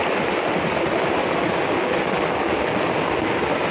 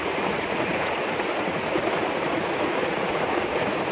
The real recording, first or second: first